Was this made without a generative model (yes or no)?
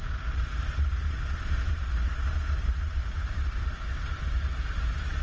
yes